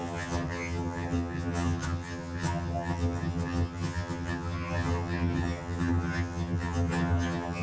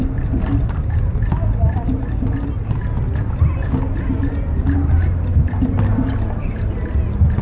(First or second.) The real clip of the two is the second